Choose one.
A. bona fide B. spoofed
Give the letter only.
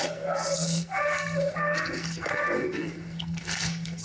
B